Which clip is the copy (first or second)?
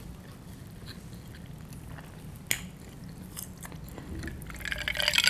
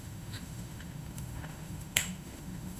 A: second